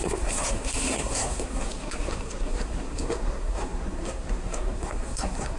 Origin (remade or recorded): remade